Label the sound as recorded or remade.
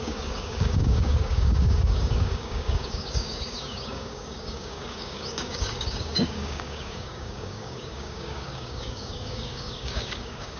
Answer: remade